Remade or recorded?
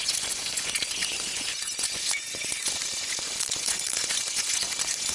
remade